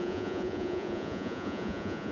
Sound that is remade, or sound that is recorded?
remade